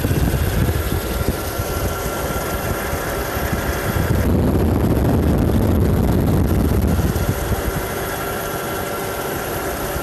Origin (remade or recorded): recorded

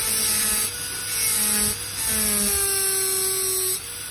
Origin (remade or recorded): recorded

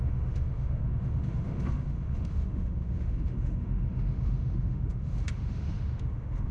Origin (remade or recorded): remade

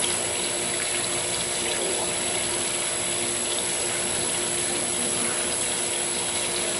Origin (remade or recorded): recorded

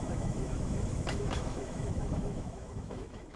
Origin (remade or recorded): remade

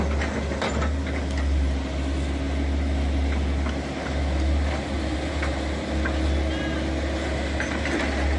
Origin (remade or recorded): recorded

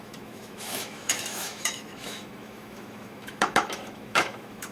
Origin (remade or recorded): remade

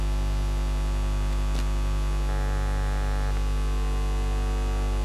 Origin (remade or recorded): recorded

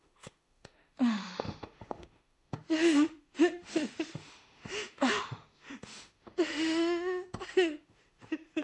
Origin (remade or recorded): remade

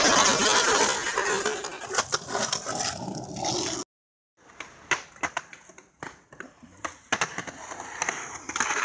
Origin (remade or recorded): recorded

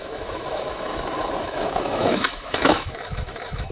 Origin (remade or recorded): remade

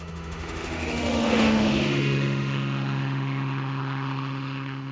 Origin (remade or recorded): remade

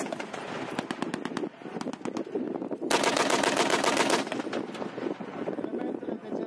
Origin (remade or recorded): recorded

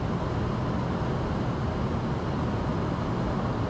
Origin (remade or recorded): recorded